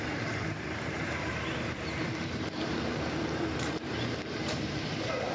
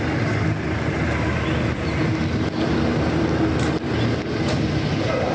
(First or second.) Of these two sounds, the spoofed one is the first